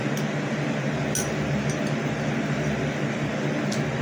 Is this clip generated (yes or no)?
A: no